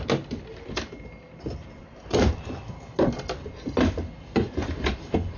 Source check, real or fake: real